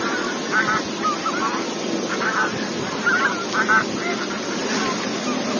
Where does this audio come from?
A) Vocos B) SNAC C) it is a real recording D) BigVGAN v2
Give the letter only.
C